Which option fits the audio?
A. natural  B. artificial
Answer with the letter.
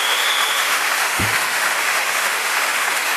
B